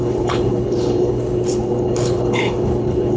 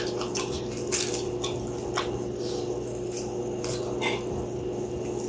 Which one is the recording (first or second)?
second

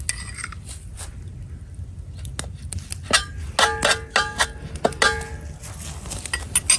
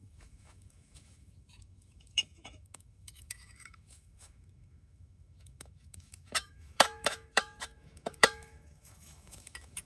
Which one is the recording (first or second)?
first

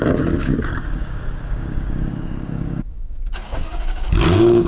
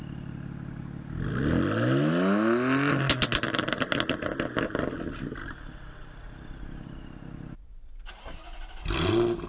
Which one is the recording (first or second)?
second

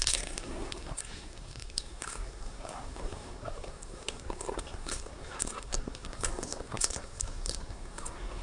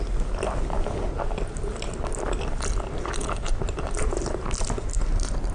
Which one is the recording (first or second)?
second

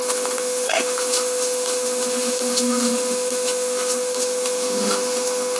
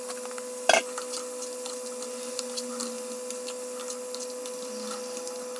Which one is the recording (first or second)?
second